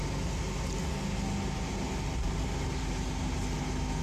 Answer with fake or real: real